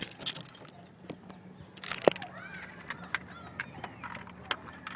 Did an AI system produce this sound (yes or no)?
no